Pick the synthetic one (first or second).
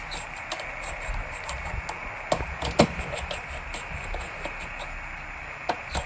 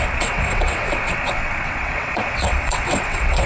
second